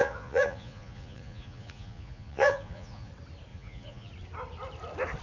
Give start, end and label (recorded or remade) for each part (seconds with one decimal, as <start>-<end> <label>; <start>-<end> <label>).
0.0-3.1 remade; 3.1-3.5 recorded; 3.5-4.1 remade; 4.1-5.2 recorded